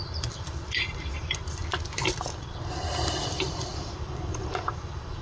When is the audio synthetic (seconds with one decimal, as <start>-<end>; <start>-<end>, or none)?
0.0-1.6; 2.4-5.2